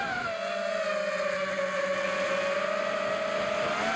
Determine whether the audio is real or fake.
real